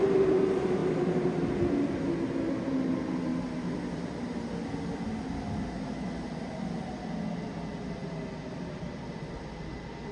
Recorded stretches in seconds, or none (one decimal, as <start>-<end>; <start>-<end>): 0.0-10.1